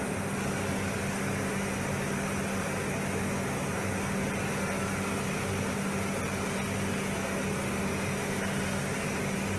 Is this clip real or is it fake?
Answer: real